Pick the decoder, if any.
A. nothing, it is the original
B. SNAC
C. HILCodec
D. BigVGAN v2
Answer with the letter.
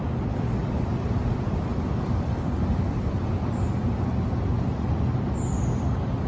A